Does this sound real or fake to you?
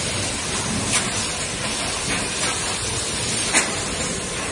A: real